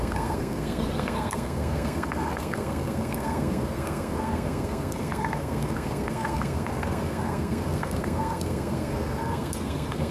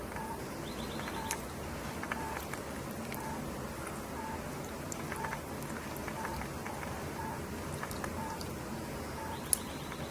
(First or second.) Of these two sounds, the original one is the second